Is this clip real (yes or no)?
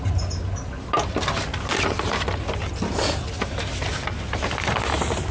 yes